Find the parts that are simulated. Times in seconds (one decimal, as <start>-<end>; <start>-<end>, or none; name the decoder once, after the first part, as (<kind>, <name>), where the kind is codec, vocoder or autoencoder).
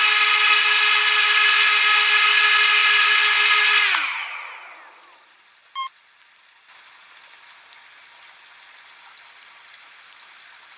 none